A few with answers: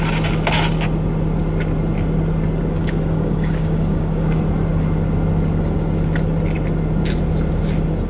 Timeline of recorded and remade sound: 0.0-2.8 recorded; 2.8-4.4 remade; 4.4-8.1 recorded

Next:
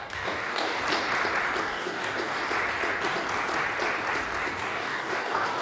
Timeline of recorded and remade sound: 0.0-0.8 remade; 0.8-1.6 recorded; 1.6-2.4 remade; 2.4-4.5 recorded; 4.5-5.6 remade

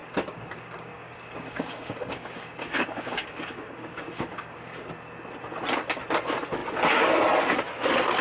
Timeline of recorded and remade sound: 0.0-4.9 remade; 4.9-8.2 recorded

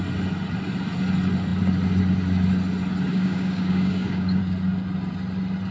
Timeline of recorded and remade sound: 0.0-3.1 recorded; 3.1-4.4 remade; 4.4-5.7 recorded